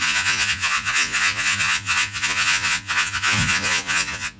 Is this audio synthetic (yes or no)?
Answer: yes